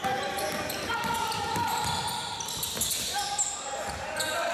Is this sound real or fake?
real